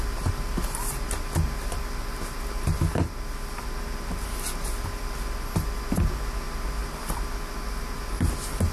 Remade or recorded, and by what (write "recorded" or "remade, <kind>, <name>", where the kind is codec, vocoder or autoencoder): recorded